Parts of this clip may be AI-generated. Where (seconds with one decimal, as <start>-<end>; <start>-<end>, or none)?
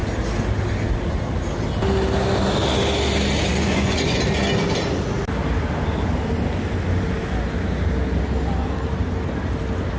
3.5-4.2